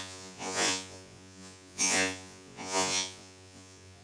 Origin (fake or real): fake